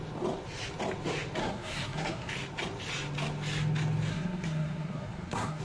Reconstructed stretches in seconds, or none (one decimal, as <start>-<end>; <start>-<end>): 1.4-2.3; 4.1-5.6

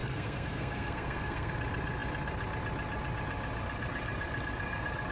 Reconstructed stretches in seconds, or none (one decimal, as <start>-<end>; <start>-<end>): 0.0-1.5

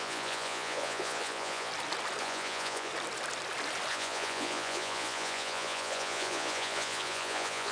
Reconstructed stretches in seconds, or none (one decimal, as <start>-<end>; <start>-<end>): 0.0-1.7; 2.2-2.9; 3.9-7.7

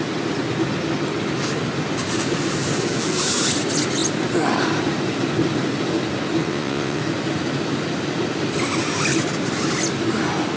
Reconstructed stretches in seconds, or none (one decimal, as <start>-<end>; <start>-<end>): 6.4-7.0

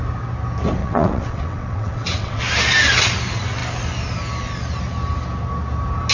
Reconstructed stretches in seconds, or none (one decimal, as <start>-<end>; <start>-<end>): 0.8-2.4

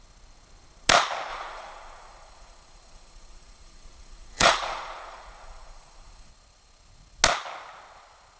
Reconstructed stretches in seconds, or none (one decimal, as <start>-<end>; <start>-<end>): 1.3-6.3

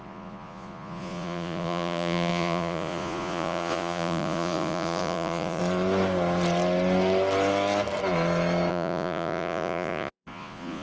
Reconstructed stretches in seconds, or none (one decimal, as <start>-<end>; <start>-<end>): 0.0-5.6; 8.7-10.8

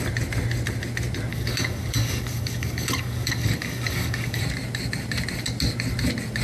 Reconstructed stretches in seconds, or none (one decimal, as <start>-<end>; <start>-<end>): 1.3-4.4